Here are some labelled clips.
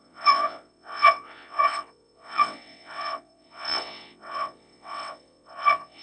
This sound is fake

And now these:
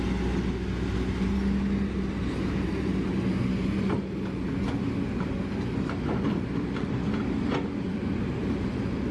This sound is real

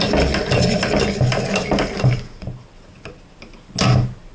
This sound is real